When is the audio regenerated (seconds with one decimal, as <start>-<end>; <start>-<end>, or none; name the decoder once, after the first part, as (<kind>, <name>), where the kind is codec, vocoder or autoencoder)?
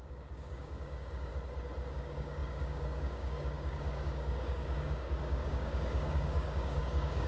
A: 0.0-1.3 (codec, DAC); 1.9-7.3